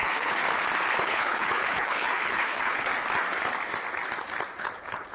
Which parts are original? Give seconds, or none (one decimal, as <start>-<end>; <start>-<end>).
0.4-1.0; 2.9-4.6